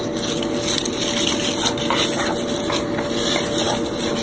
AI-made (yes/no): no